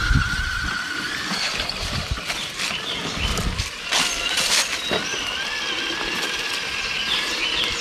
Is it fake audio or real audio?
fake